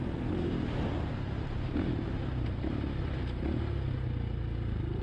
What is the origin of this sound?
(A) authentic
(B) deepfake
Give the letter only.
A